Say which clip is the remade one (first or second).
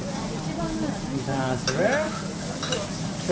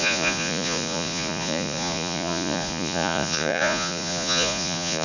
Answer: second